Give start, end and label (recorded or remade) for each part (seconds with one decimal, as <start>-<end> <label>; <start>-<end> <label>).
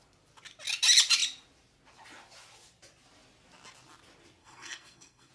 0.0-4.4 recorded; 4.4-5.3 remade